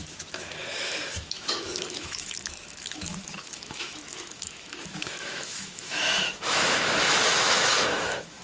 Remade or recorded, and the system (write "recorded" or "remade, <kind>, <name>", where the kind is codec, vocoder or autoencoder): remade, autoencoder, DAC-VAE